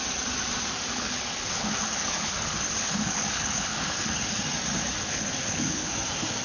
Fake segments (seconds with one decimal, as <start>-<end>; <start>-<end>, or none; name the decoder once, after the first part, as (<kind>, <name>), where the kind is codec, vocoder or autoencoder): 0.9-4.4 (codec, HILCodec); 5.0-5.9